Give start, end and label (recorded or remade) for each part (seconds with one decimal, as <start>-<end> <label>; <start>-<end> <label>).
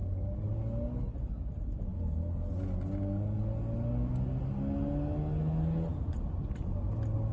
0.0-7.3 recorded